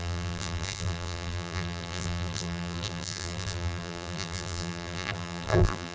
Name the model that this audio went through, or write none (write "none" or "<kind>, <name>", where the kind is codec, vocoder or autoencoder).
vocoder, BigVGAN v2